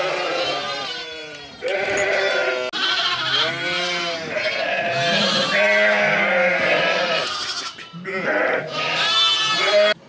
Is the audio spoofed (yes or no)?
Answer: no